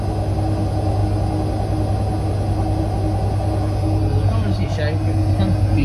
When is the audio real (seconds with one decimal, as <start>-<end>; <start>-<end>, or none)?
0.0-5.8